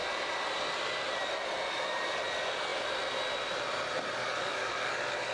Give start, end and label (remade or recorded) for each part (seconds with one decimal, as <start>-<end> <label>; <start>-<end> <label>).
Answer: 0.0-4.2 recorded; 4.2-5.3 remade